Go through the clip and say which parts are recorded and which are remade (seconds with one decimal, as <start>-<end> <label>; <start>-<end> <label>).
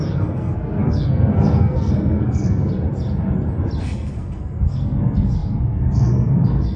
0.0-2.7 remade; 2.7-3.8 recorded; 3.8-6.8 remade